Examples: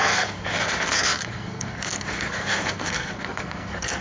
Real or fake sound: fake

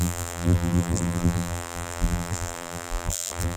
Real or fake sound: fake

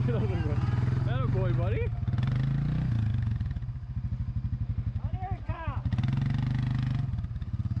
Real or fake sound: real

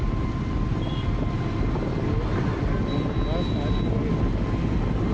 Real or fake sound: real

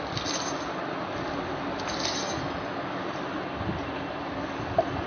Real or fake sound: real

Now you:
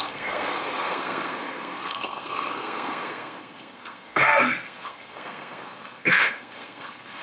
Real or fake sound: fake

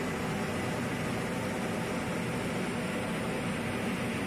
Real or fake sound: real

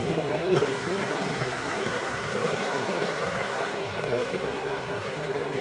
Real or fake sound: fake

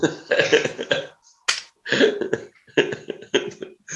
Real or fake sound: real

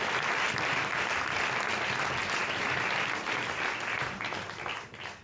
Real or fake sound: real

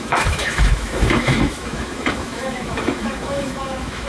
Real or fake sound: fake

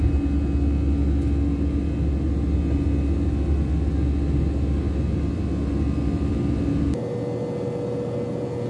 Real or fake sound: real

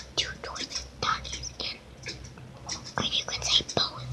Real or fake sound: fake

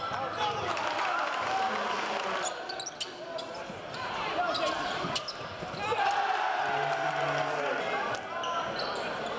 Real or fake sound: real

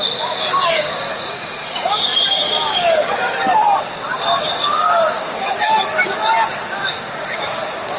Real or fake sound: fake